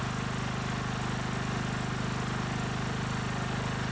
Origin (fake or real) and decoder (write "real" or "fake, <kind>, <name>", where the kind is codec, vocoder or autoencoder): real